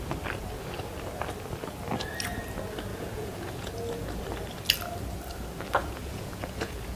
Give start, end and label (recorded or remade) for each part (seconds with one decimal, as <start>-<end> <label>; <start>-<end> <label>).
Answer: 0.0-2.9 recorded; 2.9-3.7 remade; 3.7-5.8 recorded; 5.8-7.0 remade